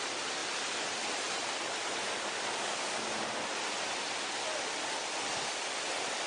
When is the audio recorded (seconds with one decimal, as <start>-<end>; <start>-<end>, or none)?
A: 0.0-6.3

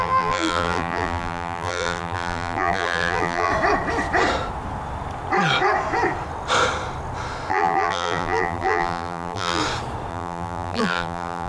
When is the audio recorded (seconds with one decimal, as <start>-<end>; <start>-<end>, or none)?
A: 3.5-7.5; 9.6-10.1

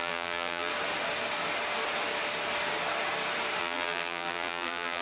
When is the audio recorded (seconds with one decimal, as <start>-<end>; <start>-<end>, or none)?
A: 0.7-3.6

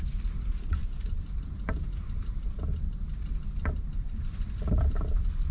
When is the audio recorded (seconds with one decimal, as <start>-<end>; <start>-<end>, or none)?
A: 0.0-5.5

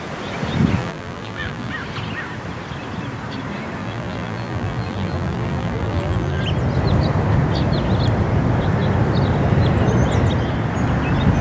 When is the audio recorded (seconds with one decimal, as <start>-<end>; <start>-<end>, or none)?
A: 0.0-0.8; 1.7-3.8; 6.4-11.4

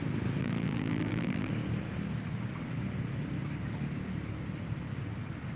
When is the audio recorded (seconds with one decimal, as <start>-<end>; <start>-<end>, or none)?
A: 0.0-0.4; 1.5-5.6

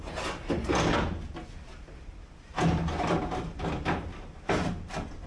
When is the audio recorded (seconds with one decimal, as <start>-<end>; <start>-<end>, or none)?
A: 0.6-1.3